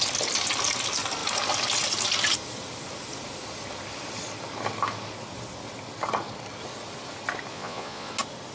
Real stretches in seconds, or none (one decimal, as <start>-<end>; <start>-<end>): 0.0-7.5; 8.1-8.5